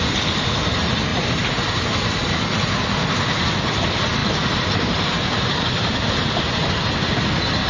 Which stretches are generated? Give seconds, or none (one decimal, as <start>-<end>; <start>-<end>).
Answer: 1.1-1.8; 4.2-6.7